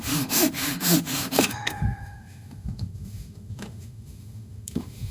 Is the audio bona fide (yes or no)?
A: no